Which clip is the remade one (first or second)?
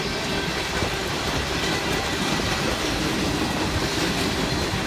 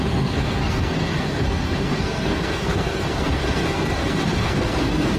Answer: second